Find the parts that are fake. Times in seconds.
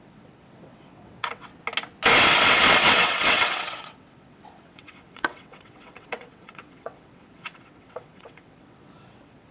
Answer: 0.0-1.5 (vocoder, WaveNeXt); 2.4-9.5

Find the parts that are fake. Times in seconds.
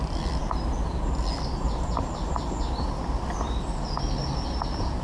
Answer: none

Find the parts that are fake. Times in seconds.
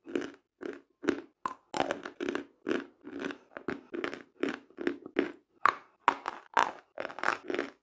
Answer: 6.6-7.2 (vocoder, BigVGAN v2)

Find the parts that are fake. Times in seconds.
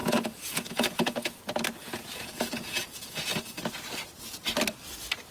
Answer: 0.0-1.4 (vocoder, Vocos); 1.8-3.6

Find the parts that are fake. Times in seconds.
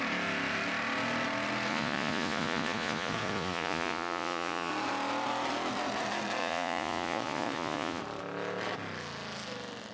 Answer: 1.7-4.7 (vocoder, Vocos); 6.4-8.0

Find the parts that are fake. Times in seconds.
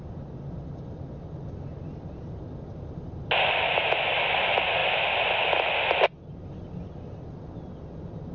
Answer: none